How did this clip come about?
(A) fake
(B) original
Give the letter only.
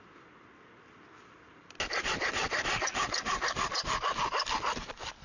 B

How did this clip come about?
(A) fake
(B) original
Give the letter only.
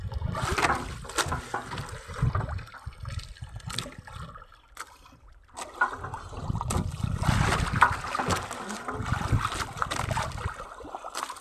B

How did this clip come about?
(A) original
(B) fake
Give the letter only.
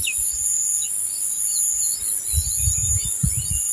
A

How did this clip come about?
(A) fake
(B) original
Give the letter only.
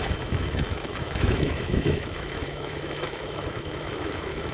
A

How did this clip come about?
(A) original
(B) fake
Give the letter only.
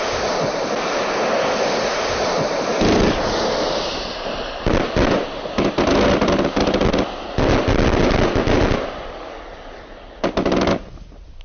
A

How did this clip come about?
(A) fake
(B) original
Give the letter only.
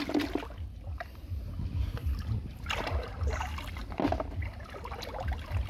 B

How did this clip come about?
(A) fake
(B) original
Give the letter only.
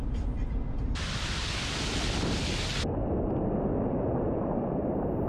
B